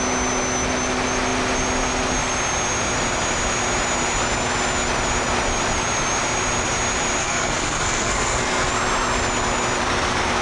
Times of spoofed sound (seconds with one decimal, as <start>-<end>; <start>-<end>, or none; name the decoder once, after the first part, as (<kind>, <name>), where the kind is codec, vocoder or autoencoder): 7.2-8.7 (codec, SNAC)